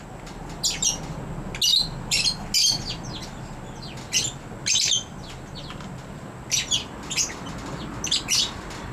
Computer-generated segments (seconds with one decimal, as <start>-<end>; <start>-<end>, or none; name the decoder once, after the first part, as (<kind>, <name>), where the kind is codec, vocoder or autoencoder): none